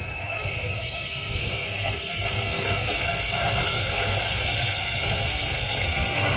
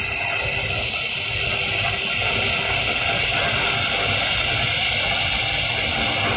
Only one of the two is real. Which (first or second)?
second